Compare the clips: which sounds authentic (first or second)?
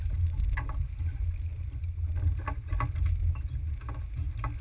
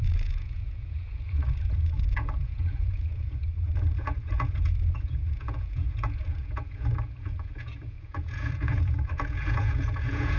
first